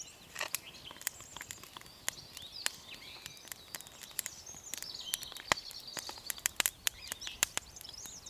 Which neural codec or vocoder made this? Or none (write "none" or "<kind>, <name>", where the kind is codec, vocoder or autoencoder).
none